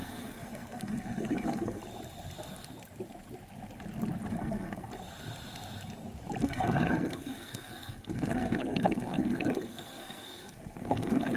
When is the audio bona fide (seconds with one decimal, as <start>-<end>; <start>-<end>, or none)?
1.8-4.3; 4.9-6.4